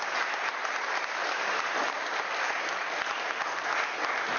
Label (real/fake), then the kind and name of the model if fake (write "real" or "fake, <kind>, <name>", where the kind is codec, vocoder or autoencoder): real